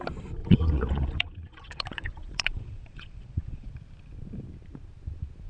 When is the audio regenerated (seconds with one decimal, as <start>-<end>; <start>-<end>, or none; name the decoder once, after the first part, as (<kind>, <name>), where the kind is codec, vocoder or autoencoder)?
0.4-3.7 (vocoder, Vocos)